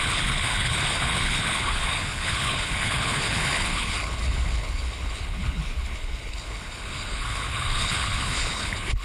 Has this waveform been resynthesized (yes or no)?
yes